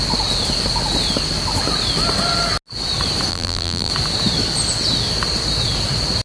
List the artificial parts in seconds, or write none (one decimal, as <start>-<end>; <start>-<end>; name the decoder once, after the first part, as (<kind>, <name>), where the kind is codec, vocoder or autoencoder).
3.3-3.9 (vocoder, BigVGAN v2)